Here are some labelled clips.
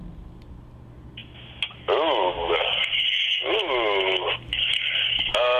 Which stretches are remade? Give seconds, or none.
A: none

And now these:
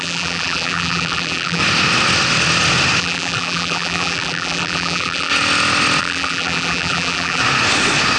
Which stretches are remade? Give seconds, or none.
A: 0.0-1.6 (vocoder, BigVGAN v2); 3.0-5.3; 6.0-7.4